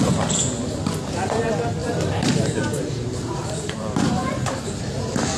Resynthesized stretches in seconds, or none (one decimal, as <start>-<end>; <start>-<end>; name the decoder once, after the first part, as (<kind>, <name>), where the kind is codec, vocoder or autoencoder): 1.8-5.0 (vocoder, BigVGAN v2)